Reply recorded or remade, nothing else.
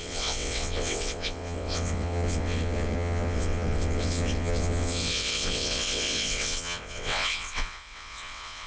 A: remade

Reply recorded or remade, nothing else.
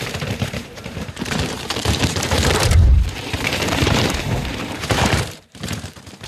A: remade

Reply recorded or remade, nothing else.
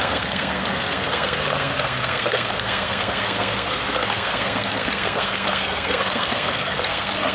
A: remade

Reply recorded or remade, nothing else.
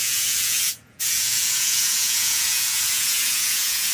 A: remade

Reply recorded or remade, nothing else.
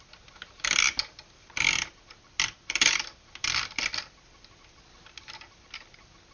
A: recorded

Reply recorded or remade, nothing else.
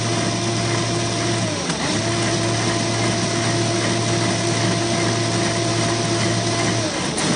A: recorded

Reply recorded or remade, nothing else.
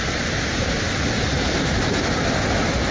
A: recorded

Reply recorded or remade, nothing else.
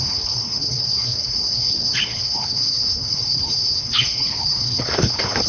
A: remade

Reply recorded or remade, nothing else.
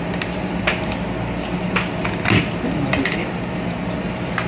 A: recorded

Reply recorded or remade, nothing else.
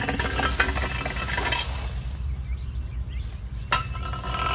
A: recorded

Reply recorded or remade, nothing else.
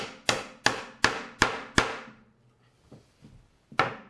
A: recorded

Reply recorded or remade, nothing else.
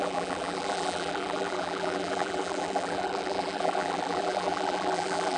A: remade